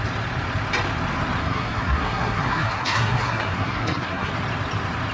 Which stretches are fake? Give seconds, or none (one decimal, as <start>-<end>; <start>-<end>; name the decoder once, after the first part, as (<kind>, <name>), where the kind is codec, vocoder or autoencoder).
1.4-4.3 (codec, SNAC)